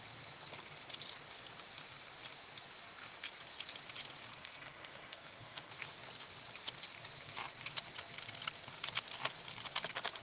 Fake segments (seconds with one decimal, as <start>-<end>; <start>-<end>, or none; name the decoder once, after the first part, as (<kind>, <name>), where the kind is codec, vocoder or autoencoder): 4.3-5.7 (codec, SNAC)